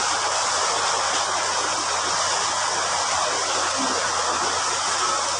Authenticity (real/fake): real